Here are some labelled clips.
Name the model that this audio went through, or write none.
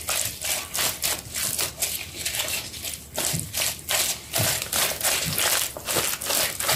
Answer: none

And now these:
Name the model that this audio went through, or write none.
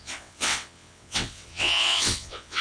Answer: vocoder, WaveNeXt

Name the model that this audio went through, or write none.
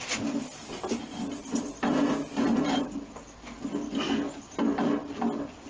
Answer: none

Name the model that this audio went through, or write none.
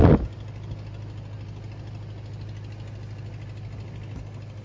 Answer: none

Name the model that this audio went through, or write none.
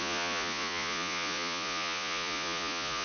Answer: vocoder, Vocos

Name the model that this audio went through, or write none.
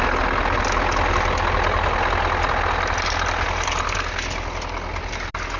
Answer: none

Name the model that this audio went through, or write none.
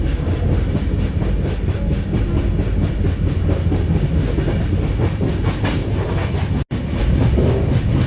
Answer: none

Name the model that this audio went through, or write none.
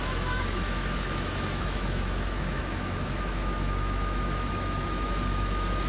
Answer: autoencoder, DAC-VAE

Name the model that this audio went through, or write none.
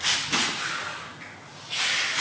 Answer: none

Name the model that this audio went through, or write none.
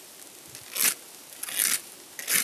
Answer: none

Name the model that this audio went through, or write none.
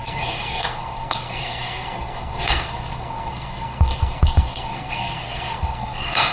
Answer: codec, SNAC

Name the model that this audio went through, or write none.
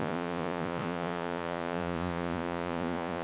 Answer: vocoder, Vocos